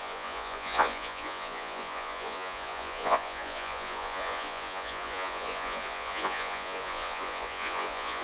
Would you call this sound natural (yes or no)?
no